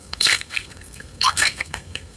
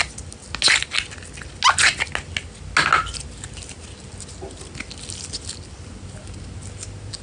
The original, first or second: second